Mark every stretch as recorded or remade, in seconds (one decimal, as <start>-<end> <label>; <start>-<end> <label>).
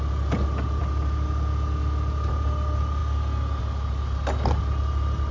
0.0-5.3 recorded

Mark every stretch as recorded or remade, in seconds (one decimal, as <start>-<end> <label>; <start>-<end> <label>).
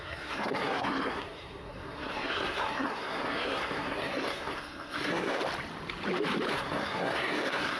0.0-5.4 remade; 5.4-6.5 recorded; 6.5-7.8 remade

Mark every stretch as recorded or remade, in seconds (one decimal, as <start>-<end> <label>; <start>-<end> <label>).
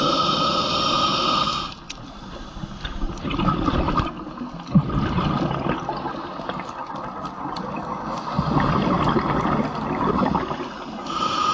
0.0-11.5 recorded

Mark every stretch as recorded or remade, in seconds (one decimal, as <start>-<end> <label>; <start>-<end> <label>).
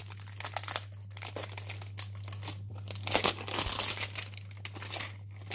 0.0-5.5 recorded